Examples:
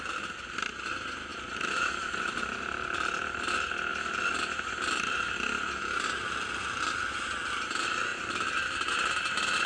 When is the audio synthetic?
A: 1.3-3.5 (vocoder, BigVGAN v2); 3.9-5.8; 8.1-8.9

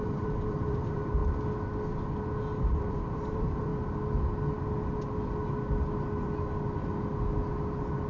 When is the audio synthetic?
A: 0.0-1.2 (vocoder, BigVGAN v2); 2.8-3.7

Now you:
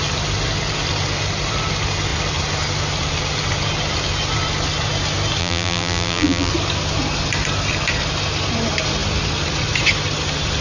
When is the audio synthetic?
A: 5.4-6.5 (vocoder, BigVGAN v2)

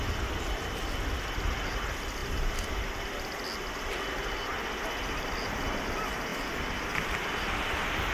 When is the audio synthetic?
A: none